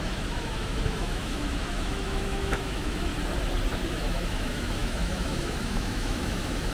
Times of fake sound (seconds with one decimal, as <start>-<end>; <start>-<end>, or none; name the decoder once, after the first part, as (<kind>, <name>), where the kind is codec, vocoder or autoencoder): 0.0-3.1 (autoencoder, DAC-VAE); 3.9-6.7